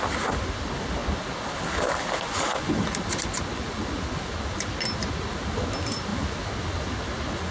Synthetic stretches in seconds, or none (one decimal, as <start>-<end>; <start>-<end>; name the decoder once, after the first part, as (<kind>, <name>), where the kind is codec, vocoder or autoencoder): none